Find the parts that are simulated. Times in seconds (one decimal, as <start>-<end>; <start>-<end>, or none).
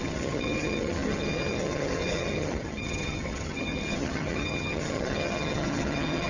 0.0-6.3